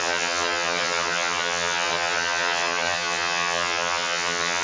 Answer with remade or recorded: remade